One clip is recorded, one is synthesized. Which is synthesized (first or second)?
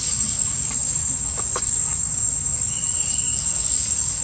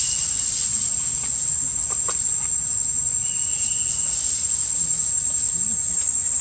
first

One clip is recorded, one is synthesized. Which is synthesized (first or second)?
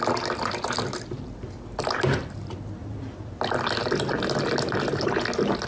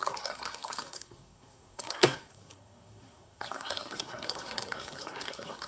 second